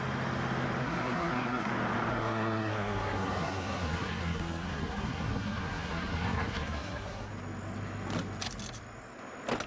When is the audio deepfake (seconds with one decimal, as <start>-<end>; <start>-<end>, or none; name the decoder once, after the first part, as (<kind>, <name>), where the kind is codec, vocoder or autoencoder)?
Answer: 0.8-1.7 (codec, SNAC); 2.1-7.3

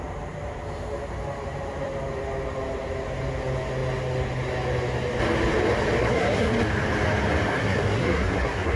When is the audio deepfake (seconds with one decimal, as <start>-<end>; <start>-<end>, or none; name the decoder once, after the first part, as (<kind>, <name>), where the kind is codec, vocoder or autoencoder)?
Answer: 6.0-6.5 (codec, SNAC); 7.5-8.8

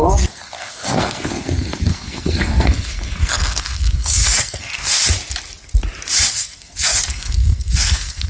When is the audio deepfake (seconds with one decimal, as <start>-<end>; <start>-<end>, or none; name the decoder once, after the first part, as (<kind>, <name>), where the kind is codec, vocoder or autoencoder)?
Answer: 0.0-5.0 (codec, SNAC); 6.3-8.3

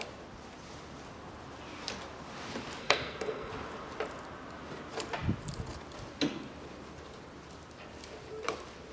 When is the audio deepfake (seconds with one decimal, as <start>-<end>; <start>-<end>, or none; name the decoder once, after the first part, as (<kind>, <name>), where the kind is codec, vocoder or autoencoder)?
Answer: 2.8-3.5 (codec, SNAC)